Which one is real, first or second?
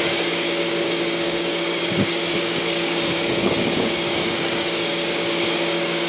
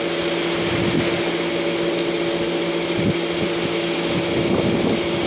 second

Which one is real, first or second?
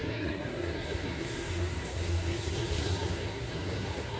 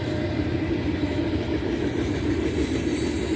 second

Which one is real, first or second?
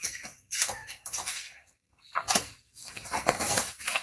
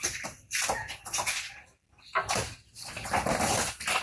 second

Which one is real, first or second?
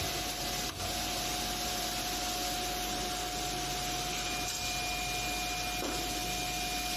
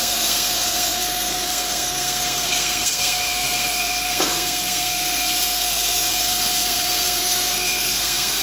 first